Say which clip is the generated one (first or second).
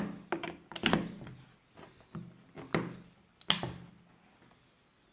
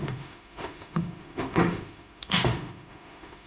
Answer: second